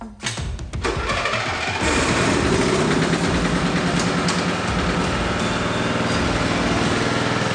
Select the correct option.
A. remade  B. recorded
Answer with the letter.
B